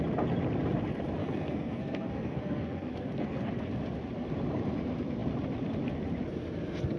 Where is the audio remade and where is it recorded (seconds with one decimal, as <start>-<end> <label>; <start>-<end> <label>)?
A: 0.0-1.2 recorded; 1.2-3.5 remade; 3.5-7.0 recorded